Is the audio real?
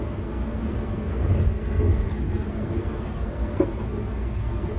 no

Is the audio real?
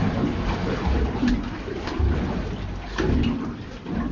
yes